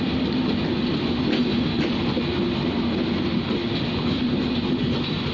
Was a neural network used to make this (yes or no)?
no